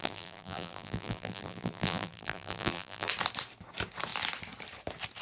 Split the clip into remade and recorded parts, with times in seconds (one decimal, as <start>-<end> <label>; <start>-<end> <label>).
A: 0.0-3.1 remade; 3.1-5.2 recorded